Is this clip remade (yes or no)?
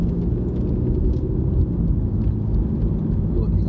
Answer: no